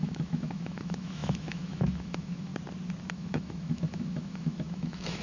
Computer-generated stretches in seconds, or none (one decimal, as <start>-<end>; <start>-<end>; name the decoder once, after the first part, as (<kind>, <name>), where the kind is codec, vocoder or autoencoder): 0.0-2.5 (autoencoder, DAC-VAE); 3.1-5.2